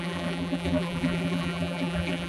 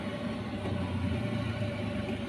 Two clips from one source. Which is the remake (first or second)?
first